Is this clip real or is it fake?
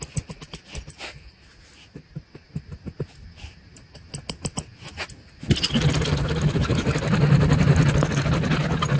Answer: real